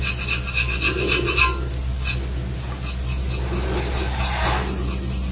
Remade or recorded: recorded